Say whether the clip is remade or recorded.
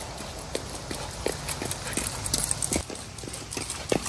recorded